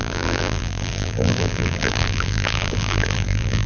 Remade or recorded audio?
remade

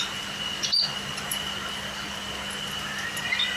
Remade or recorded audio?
recorded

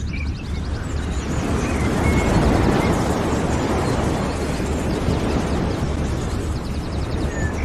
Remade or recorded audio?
recorded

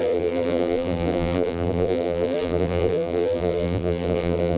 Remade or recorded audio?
remade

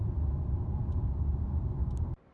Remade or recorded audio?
recorded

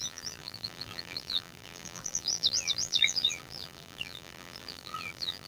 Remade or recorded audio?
remade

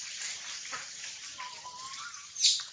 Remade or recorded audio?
recorded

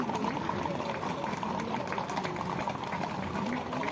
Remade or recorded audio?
recorded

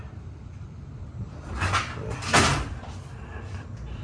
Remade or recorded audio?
remade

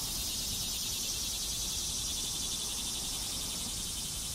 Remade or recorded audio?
recorded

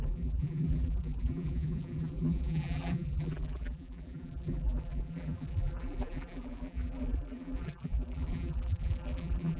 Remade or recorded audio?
remade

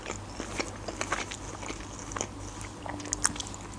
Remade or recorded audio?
recorded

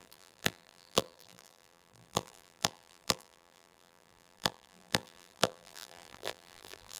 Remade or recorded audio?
remade